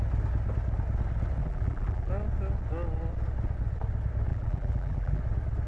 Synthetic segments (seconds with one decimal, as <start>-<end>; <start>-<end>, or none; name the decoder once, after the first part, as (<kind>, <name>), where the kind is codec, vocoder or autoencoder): 1.4-2.1 (vocoder, BigVGAN v2); 4.3-5.2